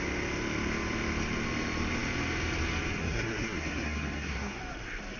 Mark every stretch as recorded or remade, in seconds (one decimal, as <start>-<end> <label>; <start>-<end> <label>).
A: 0.0-3.0 recorded; 3.0-4.6 remade; 4.6-5.2 recorded